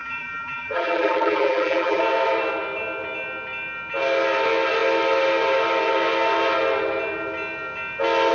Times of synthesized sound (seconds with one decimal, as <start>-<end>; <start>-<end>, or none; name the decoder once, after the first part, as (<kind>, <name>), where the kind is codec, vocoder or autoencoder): 0.0-2.0 (vocoder, BigVGAN v2)